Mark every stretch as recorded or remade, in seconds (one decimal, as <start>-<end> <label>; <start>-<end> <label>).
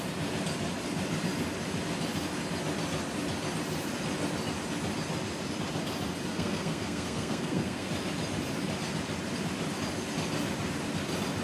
0.0-6.3 recorded; 6.3-7.9 remade; 7.9-11.4 recorded